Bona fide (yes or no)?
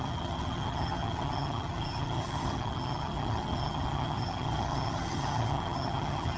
no